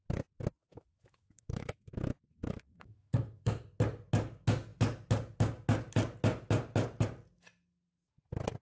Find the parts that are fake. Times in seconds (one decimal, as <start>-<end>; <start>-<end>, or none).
0.6-3.6